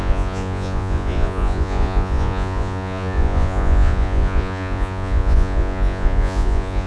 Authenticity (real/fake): fake